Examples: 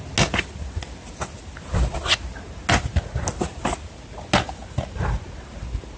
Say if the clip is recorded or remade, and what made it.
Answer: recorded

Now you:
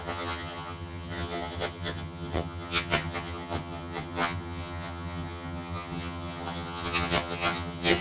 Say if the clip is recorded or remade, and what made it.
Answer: remade, vocoder, HiFi-GAN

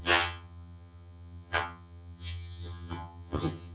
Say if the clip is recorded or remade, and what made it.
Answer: remade, vocoder, HiFi-GAN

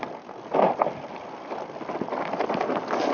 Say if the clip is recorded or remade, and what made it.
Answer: recorded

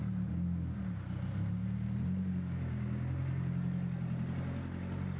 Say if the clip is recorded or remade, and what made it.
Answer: recorded